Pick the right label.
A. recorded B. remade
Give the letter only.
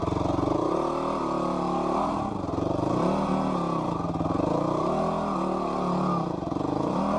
A